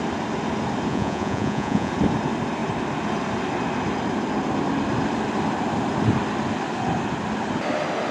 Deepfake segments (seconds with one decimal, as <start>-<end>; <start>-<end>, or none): 0.9-1.9